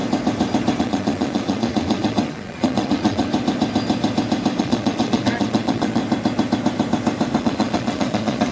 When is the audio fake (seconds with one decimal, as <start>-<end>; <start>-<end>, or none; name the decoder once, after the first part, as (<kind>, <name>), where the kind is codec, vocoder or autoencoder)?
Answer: 0.8-3.3 (vocoder, Vocos); 4.6-6.0; 7.4-8.5